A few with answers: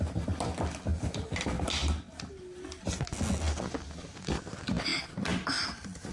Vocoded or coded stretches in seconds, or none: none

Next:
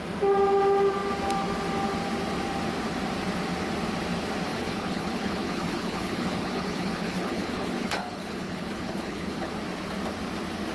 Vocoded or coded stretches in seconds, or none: 4.5-9.5 (codec, HILCodec)

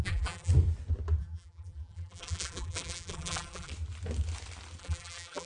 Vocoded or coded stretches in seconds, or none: 0.0-0.5 (vocoder, BigVGAN v2); 1.2-3.7; 4.8-5.5

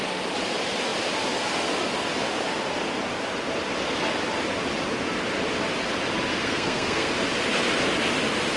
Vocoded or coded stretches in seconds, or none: 6.3-7.1 (codec, SNAC)

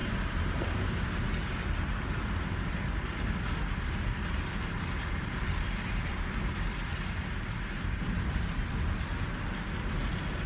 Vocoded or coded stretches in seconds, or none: none

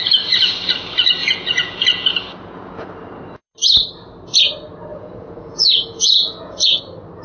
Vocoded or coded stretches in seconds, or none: 1.2-2.9 (vocoder, Vocos); 4.9-6.8